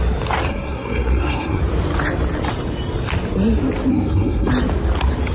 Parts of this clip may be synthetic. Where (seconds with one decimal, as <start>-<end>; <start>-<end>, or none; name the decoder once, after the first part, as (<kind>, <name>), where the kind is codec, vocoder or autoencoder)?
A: 0.5-1.6 (codec, SNAC); 3.9-4.5